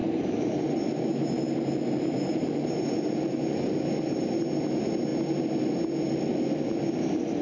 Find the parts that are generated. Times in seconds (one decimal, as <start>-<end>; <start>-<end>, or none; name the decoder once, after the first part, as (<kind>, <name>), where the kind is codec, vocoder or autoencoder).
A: 0.0-4.4 (vocoder, BigVGAN v2)